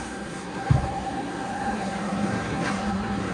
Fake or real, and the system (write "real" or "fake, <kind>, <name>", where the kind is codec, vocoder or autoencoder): fake, codec, SNAC